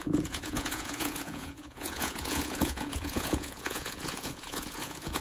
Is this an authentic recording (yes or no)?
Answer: no